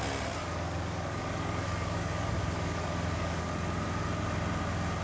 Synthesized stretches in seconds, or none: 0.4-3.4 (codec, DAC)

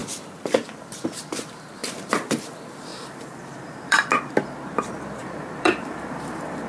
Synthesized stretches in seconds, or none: 2.9-4.3 (vocoder, BigVGAN v2); 5.2-6.7

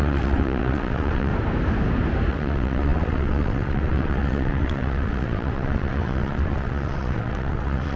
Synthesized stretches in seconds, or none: 0.0-1.3 (vocoder, WaveNeXt); 2.3-8.0

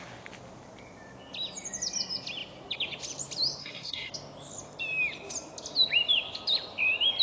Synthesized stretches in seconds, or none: 3.6-4.1 (codec, SNAC)

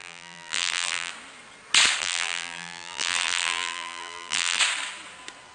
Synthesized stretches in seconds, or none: 0.0-1.1 (vocoder, BigVGAN v2); 2.0-4.6

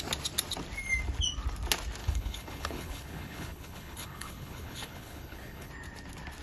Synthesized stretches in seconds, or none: 2.0-5.7 (codec, HILCodec)

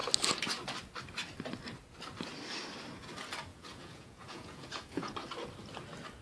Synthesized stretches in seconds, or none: 3.5-5.1 (vocoder, Vocos)

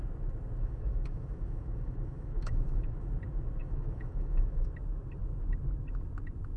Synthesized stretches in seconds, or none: 0.6-3.1 (autoencoder, DAC-VAE); 3.6-4.7